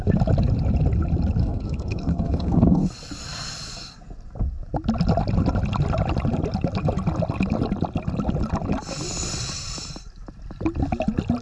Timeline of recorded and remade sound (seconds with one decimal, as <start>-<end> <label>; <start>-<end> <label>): 0.0-1.4 recorded; 1.4-2.9 remade; 2.9-11.4 recorded